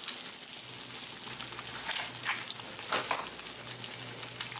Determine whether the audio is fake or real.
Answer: real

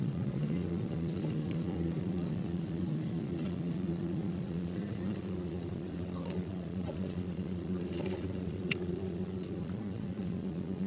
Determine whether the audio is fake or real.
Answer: fake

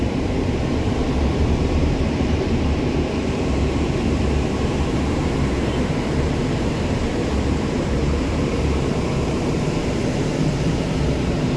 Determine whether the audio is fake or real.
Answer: fake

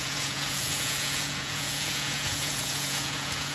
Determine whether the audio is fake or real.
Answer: fake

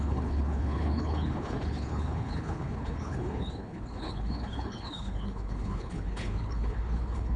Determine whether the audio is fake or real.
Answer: fake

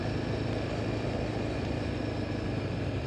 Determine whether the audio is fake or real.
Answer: real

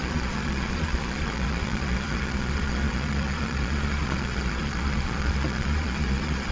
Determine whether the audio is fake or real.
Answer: fake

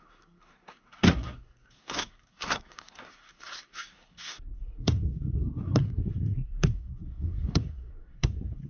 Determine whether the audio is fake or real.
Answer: fake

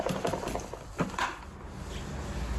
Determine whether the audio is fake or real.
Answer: real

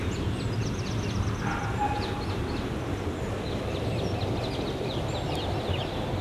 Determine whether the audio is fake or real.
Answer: real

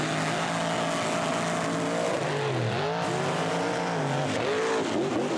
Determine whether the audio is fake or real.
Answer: real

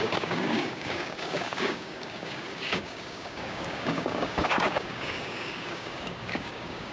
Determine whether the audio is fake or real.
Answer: fake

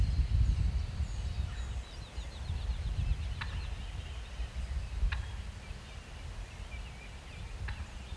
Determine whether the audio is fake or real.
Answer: real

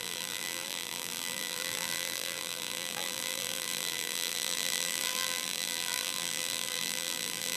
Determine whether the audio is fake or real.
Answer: fake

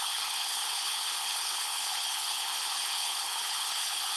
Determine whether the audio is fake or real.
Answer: fake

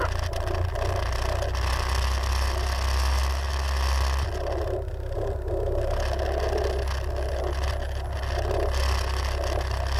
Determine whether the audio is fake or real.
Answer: real